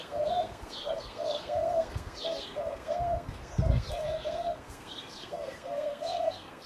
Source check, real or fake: fake